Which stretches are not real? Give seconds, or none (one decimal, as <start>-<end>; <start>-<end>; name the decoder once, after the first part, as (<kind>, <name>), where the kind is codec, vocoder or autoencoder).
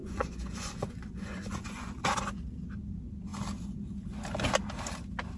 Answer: 0.0-2.0 (vocoder, Vocos)